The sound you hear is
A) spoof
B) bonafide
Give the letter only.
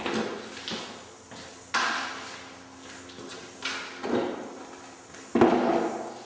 B